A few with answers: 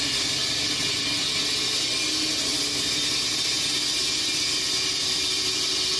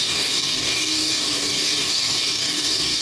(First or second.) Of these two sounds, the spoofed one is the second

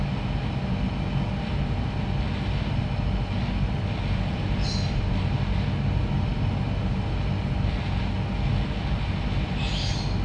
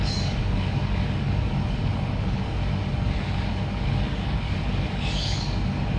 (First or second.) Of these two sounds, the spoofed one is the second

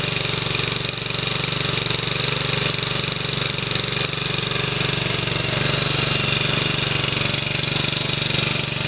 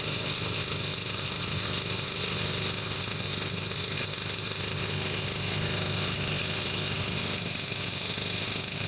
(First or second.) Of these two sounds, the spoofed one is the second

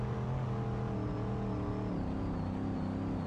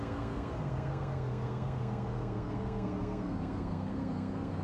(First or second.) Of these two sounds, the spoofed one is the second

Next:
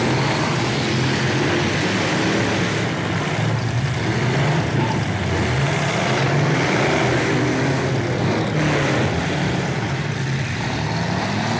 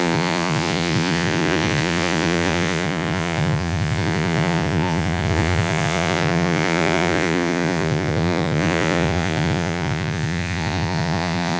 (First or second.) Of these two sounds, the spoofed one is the second